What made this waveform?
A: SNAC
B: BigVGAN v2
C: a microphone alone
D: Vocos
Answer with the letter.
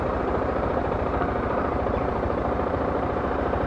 B